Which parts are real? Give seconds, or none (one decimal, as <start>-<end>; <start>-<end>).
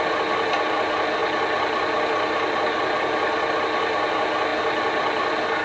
0.0-5.6